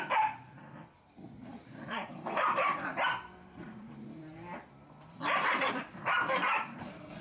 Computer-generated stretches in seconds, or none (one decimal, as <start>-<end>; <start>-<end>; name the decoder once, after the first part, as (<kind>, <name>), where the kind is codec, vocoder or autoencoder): 1.4-5.7 (vocoder, BigVGAN v2)